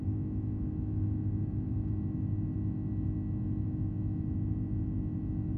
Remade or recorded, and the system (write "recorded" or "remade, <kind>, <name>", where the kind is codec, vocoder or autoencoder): recorded